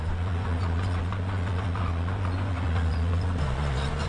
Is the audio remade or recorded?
remade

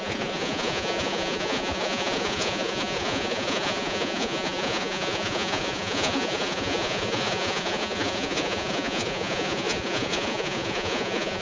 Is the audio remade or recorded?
remade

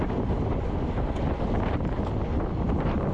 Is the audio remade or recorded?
recorded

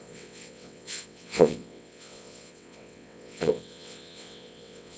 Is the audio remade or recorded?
remade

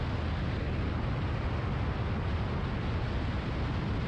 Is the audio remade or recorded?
recorded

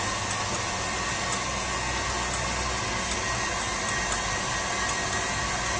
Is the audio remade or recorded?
recorded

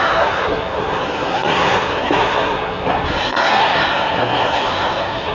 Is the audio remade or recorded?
remade